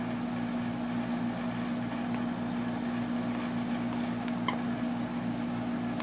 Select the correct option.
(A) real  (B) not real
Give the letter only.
A